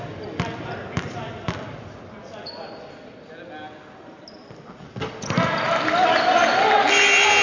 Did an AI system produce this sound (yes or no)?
no